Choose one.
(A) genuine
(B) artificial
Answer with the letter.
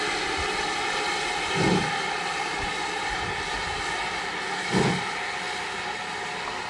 A